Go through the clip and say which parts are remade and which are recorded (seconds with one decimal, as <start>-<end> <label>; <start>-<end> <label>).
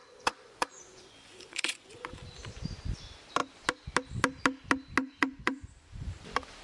0.0-2.2 remade; 2.2-5.0 recorded; 5.0-6.1 remade; 6.1-6.6 recorded